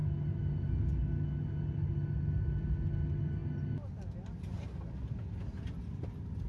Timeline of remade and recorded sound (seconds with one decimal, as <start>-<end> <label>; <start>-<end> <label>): 0.0-6.5 recorded